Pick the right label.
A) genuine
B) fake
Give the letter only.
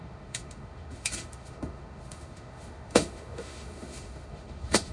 B